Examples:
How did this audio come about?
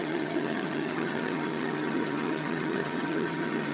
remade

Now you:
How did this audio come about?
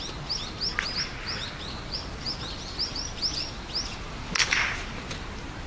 recorded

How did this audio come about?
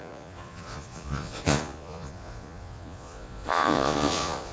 remade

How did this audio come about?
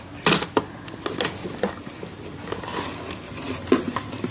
recorded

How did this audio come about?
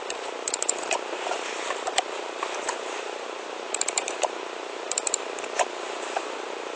remade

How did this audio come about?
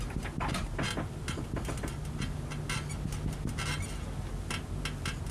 recorded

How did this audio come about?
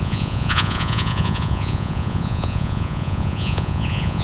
remade